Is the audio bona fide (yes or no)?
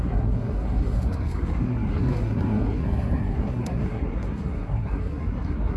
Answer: no